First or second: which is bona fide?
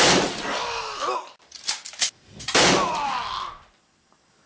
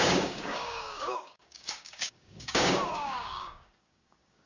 first